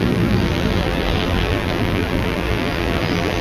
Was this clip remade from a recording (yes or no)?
yes